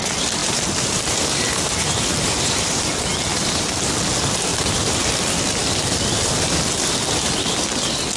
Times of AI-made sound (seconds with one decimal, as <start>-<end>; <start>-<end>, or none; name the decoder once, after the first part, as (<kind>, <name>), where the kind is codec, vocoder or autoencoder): 0.4-2.8 (vocoder, BigVGAN v2); 3.3-3.9; 4.5-5.1